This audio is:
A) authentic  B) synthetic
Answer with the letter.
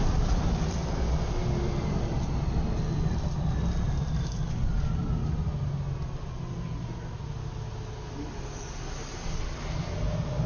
A